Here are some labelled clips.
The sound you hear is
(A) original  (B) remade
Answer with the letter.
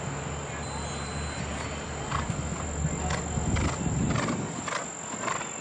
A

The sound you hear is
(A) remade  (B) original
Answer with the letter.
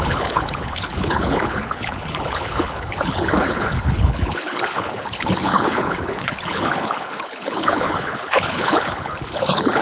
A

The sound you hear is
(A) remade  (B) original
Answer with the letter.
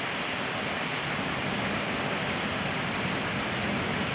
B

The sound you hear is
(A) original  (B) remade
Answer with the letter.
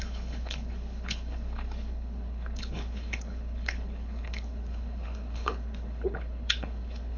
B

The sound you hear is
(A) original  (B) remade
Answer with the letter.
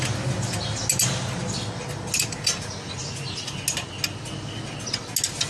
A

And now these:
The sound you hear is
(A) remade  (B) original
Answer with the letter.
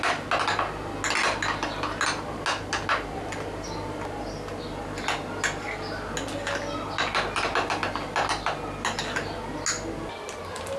B